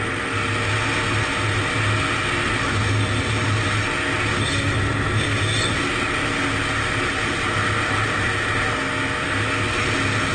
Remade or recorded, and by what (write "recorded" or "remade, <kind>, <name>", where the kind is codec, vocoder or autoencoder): recorded